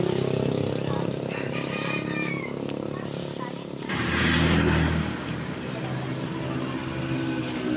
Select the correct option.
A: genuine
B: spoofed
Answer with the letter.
A